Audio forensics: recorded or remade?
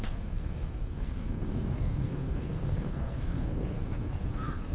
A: remade